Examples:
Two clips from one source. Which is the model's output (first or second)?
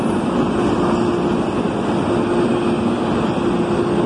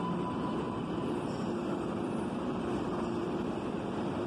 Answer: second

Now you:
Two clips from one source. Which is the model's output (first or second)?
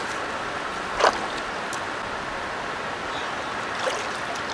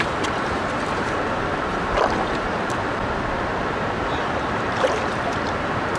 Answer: second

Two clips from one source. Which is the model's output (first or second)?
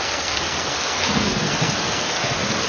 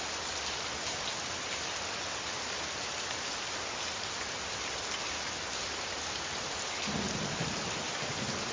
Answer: first